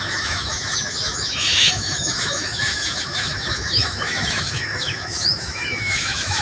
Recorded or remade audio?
remade